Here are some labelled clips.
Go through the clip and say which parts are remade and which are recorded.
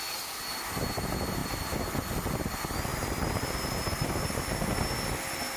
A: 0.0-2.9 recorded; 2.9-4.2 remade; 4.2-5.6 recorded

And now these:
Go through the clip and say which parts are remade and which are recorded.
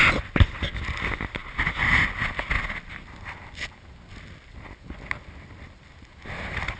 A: 0.0-6.8 recorded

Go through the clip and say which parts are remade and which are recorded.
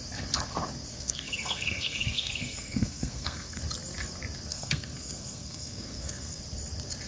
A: 0.0-0.9 recorded; 0.9-3.6 remade; 3.6-4.5 recorded; 4.5-6.4 remade; 6.4-7.1 recorded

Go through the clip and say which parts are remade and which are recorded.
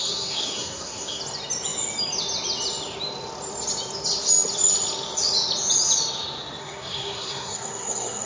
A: 0.0-1.2 remade; 1.2-6.6 recorded; 6.6-8.3 remade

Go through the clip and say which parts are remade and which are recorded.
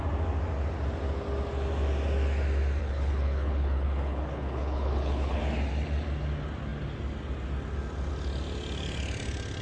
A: 0.0-2.8 recorded; 2.8-5.4 remade; 5.4-9.6 recorded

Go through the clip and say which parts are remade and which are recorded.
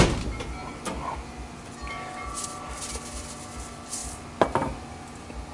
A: 0.0-5.5 recorded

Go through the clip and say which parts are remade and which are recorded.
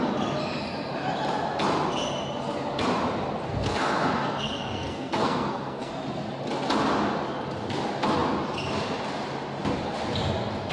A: 0.0-3.5 recorded; 3.5-5.9 remade; 5.9-10.7 recorded